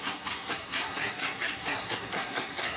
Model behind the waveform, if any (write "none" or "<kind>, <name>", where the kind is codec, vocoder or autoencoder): codec, SNAC